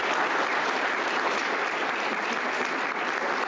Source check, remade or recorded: recorded